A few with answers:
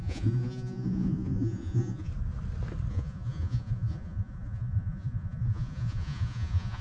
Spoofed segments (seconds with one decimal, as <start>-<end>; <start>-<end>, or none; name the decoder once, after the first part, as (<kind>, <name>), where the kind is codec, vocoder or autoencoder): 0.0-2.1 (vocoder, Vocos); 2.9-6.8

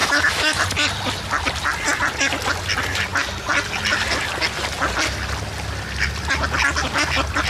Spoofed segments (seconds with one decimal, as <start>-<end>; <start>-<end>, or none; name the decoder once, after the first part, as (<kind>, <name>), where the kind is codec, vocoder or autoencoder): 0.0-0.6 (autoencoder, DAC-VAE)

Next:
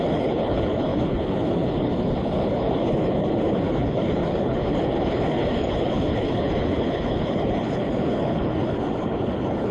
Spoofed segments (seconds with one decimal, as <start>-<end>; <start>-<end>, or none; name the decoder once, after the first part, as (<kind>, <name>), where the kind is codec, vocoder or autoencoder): 0.0-9.7 (codec, HILCodec)

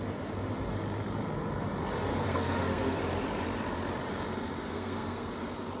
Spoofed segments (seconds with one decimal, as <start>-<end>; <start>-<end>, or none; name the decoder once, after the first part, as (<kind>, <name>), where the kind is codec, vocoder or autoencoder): 2.1-3.0 (codec, SNAC); 4.6-5.3

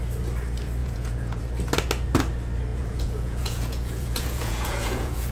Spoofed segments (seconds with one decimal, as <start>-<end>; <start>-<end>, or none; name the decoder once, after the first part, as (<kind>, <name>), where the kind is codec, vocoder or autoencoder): 0.8-1.4 (vocoder, Vocos); 2.7-5.3